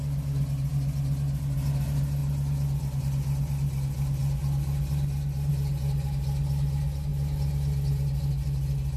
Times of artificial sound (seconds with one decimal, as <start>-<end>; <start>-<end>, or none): none